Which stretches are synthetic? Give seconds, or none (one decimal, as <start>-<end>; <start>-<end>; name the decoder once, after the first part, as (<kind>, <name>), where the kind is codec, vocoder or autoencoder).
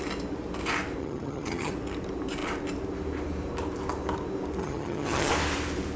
1.0-1.7 (vocoder, HiFi-GAN); 4.6-5.3